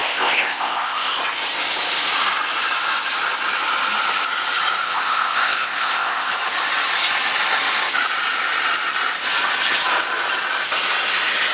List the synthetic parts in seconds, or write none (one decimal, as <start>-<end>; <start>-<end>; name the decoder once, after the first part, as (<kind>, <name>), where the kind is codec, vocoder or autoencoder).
0.0-1.2 (codec, ZipCodec); 4.8-6.3